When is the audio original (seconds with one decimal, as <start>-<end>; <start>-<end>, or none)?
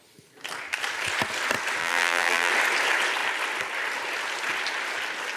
0.0-1.8; 2.5-5.4